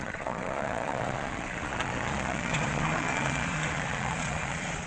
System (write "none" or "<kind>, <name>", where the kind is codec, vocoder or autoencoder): vocoder, Vocos